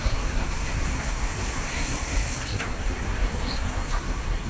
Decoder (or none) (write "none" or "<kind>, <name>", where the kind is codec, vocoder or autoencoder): codec, SNAC